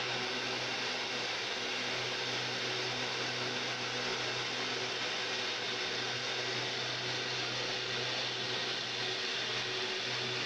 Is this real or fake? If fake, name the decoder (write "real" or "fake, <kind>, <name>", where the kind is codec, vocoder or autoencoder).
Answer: real